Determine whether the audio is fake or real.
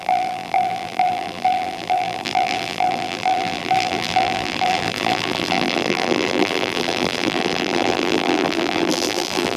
fake